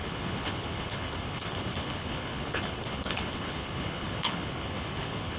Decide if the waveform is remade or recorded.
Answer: remade